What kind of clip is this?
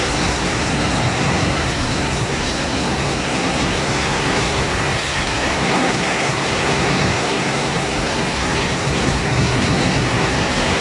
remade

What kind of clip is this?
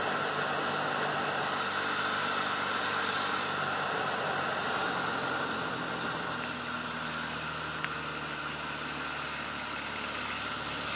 recorded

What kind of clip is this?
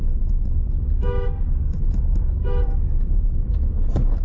recorded